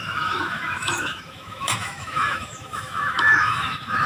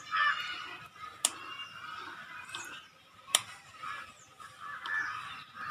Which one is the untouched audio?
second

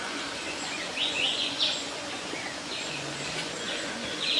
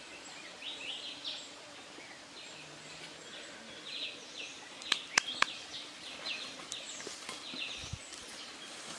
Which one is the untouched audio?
second